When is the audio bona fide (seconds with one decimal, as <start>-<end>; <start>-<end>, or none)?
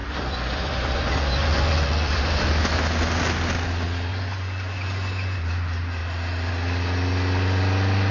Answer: 2.4-4.1; 5.4-8.1